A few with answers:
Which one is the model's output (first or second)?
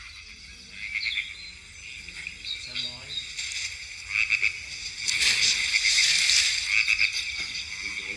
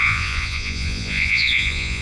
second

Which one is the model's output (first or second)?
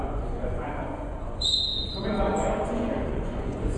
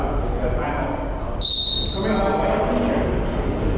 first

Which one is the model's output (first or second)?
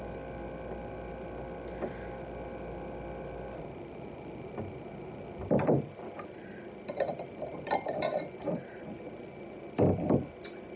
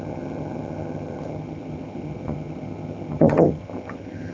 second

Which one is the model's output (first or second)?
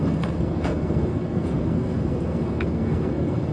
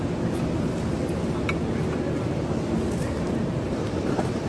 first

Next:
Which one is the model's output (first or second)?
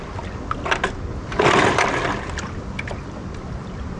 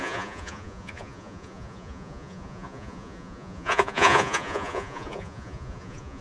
second